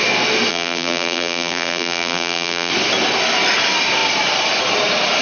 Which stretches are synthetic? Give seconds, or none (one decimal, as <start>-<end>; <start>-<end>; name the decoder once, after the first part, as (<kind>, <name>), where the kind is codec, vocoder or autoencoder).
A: 0.5-2.7 (vocoder, BigVGAN v2)